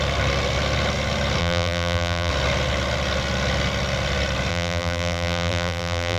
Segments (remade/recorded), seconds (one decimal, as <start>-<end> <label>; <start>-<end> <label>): 0.0-1.4 recorded; 1.4-2.3 remade; 2.3-4.5 recorded; 4.5-6.2 remade